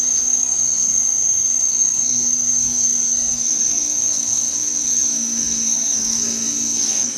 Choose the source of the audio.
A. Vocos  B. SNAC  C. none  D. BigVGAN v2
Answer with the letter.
B